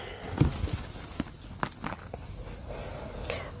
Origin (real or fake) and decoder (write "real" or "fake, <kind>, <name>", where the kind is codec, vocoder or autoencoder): real